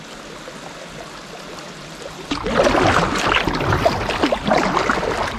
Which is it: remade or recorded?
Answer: recorded